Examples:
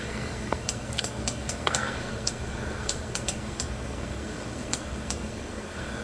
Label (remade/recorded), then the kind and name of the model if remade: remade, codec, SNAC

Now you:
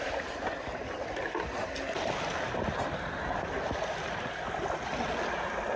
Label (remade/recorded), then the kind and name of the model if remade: recorded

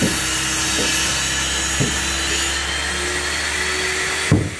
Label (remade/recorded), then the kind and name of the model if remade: recorded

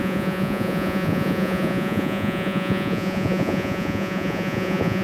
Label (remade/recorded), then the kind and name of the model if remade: remade, vocoder, Vocos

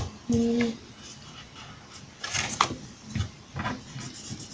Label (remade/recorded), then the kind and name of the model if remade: recorded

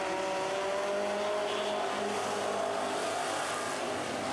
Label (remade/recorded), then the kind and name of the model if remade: recorded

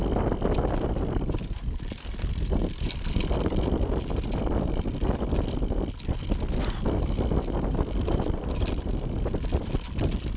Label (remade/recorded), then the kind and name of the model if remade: recorded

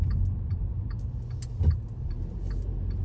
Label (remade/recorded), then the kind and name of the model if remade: recorded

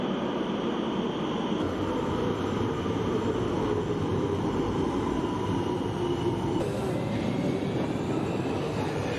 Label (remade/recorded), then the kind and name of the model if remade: recorded